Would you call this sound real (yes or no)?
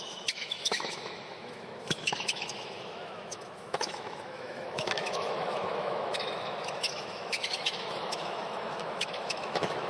no